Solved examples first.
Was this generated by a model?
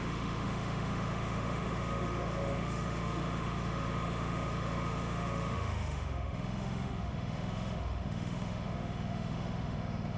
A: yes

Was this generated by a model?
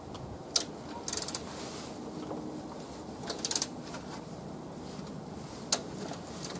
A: no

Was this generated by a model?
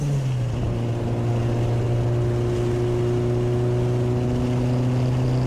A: no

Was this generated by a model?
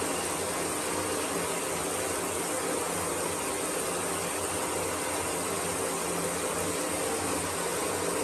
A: no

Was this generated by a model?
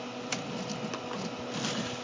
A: no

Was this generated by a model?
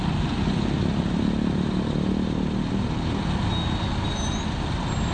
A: no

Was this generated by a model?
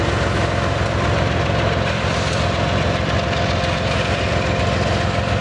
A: no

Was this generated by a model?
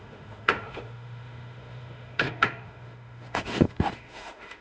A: yes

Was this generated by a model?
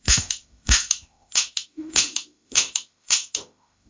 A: yes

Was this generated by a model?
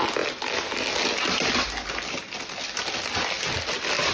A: no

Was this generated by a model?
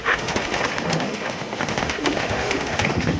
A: yes